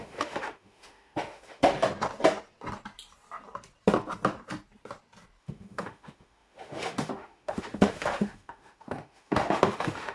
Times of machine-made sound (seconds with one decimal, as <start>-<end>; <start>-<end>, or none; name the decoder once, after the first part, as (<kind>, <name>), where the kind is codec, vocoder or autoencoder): 0.0-1.7 (autoencoder, DAC-VAE); 5.4-10.1